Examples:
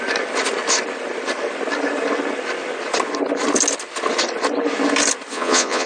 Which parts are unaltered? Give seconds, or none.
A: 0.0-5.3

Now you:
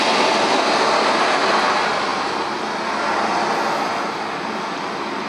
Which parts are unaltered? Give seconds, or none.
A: 0.0-2.1

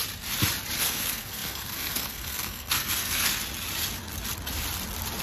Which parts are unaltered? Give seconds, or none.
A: 0.0-0.8; 3.4-5.2

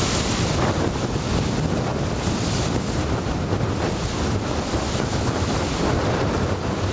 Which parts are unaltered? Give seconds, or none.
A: 0.0-6.9

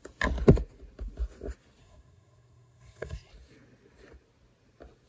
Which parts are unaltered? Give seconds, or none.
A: 0.0-1.8; 3.3-5.1